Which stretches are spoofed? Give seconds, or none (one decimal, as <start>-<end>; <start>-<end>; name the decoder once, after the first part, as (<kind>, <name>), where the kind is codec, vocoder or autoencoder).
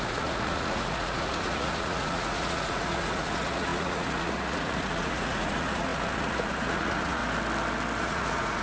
0.0-7.2 (vocoder, Vocos); 8.0-8.6